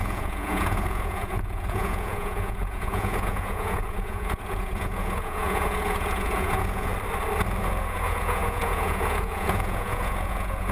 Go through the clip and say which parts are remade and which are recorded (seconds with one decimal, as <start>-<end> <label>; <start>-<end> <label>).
0.0-6.9 remade; 6.9-7.6 recorded; 7.6-10.7 remade